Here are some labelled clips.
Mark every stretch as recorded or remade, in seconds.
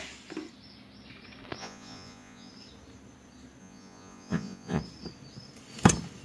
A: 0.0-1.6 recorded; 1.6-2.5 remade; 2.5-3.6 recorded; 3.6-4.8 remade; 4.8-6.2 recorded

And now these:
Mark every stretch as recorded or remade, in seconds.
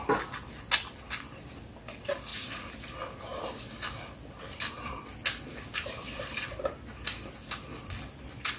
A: 0.0-8.6 recorded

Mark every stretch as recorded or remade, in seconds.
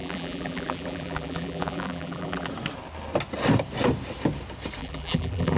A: 0.0-2.5 remade; 2.5-4.8 recorded; 4.8-5.6 remade